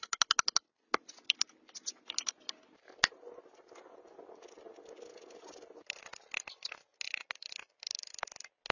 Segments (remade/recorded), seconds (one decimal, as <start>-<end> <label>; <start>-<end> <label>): 0.0-8.7 recorded